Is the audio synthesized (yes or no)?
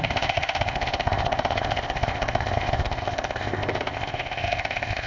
yes